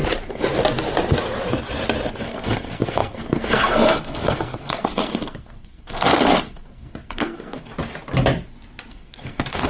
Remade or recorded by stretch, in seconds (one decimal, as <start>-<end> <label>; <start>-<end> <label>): 0.0-2.2 recorded; 2.2-7.7 remade; 7.7-8.9 recorded; 8.9-9.7 remade